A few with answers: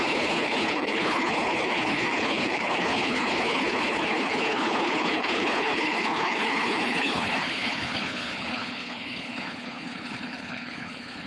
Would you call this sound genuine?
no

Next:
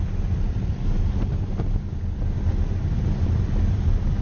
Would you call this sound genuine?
yes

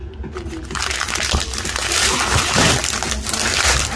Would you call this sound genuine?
yes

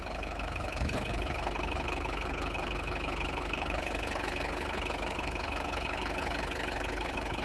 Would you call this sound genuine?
no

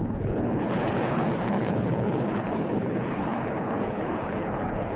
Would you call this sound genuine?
no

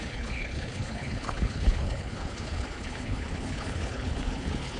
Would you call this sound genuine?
no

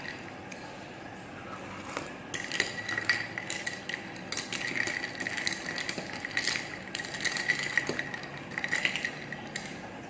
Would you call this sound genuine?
yes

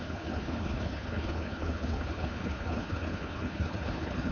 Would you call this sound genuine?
no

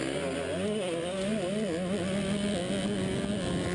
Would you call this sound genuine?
yes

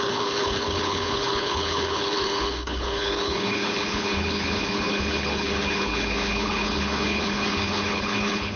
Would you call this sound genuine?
no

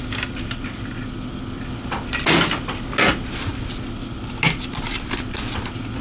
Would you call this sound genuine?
yes